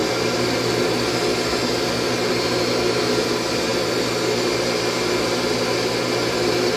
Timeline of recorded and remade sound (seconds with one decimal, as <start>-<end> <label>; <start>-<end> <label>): 0.0-6.8 recorded